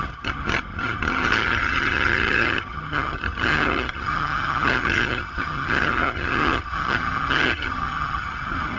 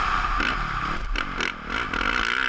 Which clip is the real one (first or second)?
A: second